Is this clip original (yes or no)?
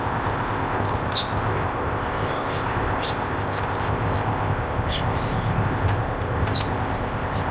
no